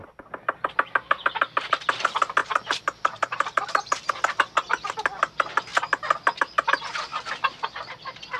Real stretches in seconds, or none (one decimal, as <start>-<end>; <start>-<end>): 0.0-2.4; 4.1-8.4